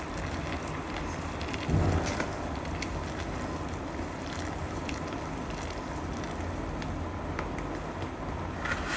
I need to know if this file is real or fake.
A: real